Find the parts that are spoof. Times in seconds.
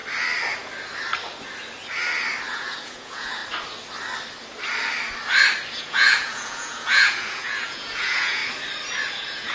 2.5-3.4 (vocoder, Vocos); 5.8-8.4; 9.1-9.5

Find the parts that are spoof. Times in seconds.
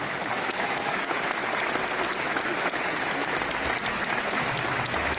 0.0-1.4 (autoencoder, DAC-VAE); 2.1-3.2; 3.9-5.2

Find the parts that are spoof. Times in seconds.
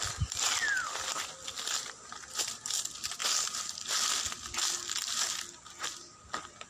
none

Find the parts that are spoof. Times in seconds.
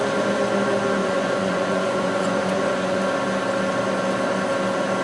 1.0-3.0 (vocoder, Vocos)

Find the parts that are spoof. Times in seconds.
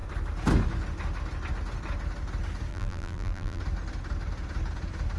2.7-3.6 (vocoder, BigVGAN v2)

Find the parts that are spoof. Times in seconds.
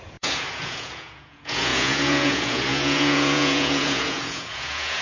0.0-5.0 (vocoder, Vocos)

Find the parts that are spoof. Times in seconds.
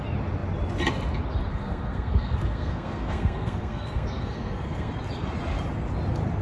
1.5-4.9 (codec, SNAC)